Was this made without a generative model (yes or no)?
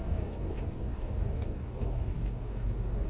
no